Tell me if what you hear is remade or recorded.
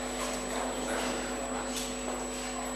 recorded